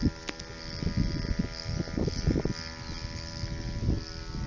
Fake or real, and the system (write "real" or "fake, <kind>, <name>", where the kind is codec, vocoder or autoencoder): real